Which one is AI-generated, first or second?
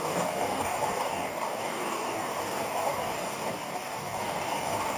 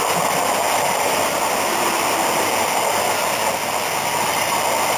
first